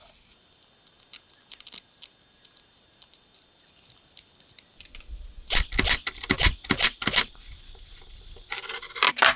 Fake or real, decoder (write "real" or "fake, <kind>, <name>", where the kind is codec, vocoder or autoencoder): real